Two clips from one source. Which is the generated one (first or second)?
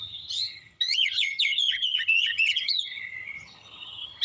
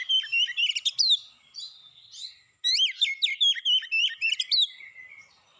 first